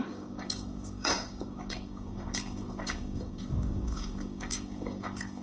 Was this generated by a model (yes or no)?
yes